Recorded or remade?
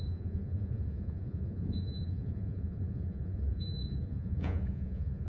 remade